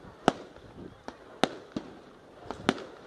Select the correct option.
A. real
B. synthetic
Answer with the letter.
A